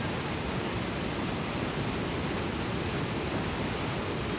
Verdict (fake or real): real